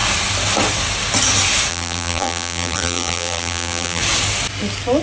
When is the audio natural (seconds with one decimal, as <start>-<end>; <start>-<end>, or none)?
0.0-1.7; 4.0-5.0